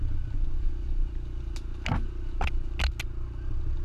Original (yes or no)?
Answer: yes